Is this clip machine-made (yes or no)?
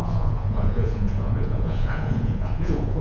yes